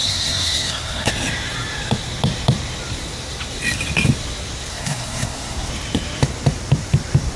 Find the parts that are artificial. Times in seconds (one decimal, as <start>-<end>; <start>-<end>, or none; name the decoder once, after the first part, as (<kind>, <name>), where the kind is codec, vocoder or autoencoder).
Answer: 0.0-1.1 (codec, SNAC); 4.7-5.7